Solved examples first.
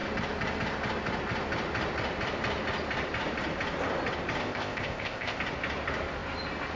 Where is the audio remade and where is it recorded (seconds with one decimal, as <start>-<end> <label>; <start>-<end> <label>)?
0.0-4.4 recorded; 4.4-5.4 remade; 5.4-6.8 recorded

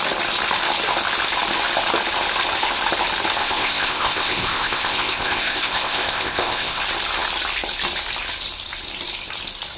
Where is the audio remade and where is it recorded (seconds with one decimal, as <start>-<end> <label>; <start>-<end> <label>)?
0.0-3.4 recorded; 3.4-6.8 remade; 6.8-9.8 recorded

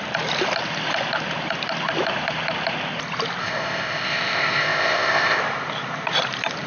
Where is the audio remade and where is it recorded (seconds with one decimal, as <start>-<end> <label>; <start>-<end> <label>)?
0.0-3.4 recorded; 3.4-5.4 remade; 5.4-6.7 recorded

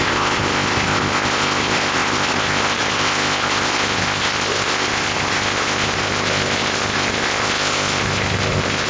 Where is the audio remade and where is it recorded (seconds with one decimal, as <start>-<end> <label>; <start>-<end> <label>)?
0.0-8.9 remade

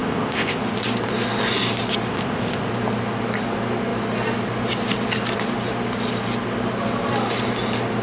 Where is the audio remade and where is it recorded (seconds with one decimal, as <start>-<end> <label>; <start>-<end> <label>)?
0.0-0.6 remade; 0.6-2.1 recorded; 2.1-2.7 remade; 2.7-8.0 recorded